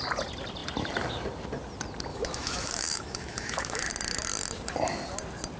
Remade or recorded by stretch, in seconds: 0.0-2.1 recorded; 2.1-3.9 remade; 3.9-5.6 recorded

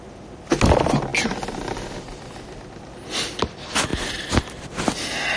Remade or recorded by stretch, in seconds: 0.0-5.4 recorded

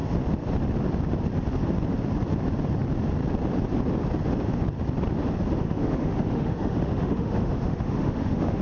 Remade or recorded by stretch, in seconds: 0.0-5.6 recorded; 5.6-8.6 remade

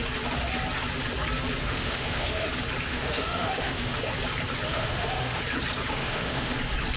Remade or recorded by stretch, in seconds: 0.0-1.6 recorded; 1.6-2.5 remade; 2.5-2.9 recorded; 2.9-4.0 remade; 4.0-4.7 recorded; 4.7-5.4 remade; 5.4-6.0 recorded; 6.0-6.5 remade; 6.5-7.0 recorded

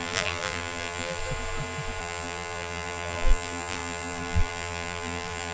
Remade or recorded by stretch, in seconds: 0.0-1.2 remade; 1.2-2.0 recorded; 2.0-5.5 remade

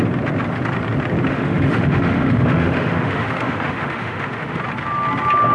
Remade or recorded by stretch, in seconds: 0.0-1.3 recorded; 1.3-4.6 remade; 4.6-5.5 recorded